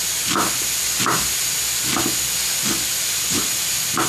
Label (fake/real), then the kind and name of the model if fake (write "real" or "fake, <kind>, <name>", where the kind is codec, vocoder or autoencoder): real